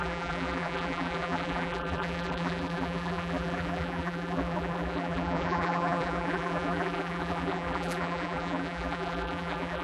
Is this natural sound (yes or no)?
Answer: no